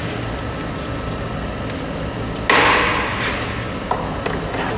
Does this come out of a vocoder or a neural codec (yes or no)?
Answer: no